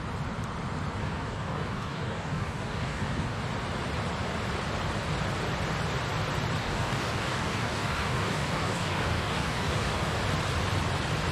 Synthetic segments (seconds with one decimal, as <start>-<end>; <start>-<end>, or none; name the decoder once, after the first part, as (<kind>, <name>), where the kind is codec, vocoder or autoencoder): 1.0-3.4 (codec, DAC); 6.6-10.2